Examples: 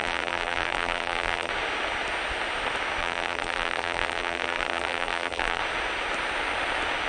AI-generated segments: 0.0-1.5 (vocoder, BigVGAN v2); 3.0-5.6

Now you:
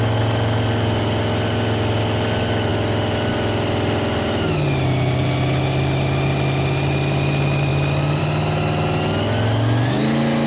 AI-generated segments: none

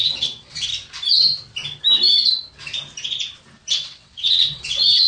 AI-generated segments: 0.0-0.7 (vocoder, WaveNeXt); 3.7-5.1

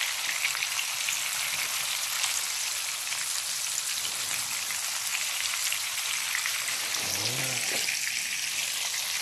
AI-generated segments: 5.1-6.1 (vocoder, BigVGAN v2); 6.5-7.1

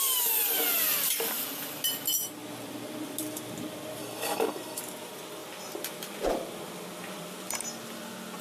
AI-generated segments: 4.0-4.8 (autoencoder, DAC-VAE)

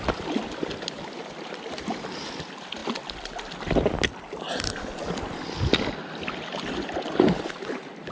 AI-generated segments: none

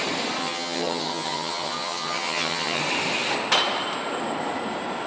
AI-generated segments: 0.4-2.8 (vocoder, HiFi-GAN)